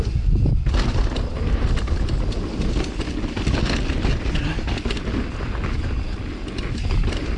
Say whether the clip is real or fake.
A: real